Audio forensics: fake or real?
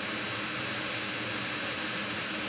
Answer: real